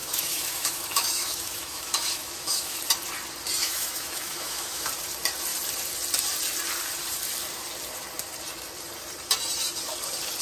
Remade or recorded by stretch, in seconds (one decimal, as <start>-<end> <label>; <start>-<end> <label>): 0.0-2.8 remade; 2.8-3.6 recorded; 3.6-4.9 remade; 4.9-10.4 recorded